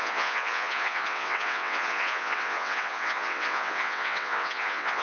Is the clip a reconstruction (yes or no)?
yes